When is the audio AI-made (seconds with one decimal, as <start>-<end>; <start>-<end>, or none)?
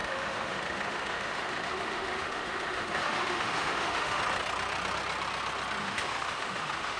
0.0-4.2; 5.8-7.0